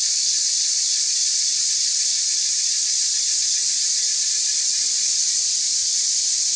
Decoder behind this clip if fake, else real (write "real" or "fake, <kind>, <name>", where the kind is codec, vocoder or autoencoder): fake, vocoder, Vocos